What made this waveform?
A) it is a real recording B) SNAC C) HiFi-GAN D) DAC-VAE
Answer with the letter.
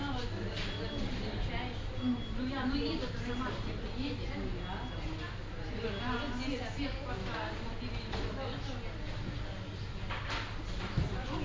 A